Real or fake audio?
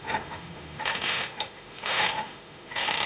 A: fake